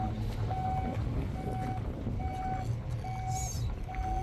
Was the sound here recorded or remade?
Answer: recorded